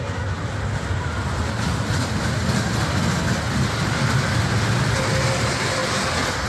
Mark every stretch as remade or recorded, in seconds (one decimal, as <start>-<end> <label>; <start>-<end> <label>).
0.0-6.5 recorded